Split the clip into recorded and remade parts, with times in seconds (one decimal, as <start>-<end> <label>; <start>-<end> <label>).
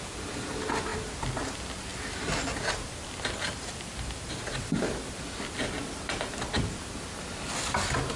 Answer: 0.0-8.2 recorded